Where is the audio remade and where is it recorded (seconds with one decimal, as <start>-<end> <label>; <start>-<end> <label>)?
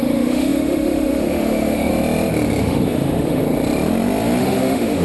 0.0-1.9 remade; 1.9-2.6 recorded; 2.6-3.4 remade; 3.4-4.4 recorded; 4.4-5.0 remade